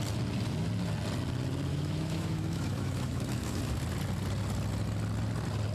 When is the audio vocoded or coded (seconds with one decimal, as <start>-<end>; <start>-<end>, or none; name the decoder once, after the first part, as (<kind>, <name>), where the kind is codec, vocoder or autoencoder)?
1.7-3.6 (autoencoder, DAC-VAE)